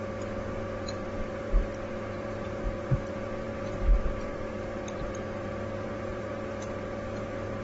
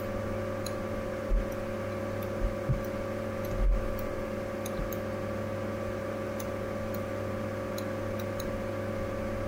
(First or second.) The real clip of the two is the second